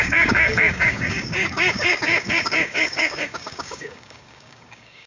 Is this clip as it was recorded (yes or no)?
no